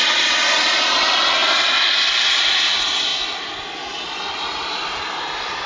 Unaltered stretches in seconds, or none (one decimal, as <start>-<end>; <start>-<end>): 0.0-5.7